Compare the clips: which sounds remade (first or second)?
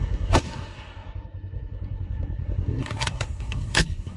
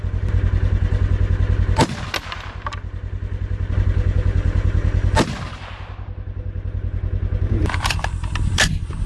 first